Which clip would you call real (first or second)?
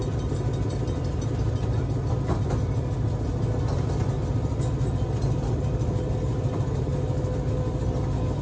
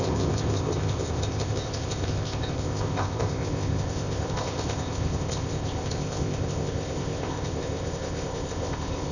first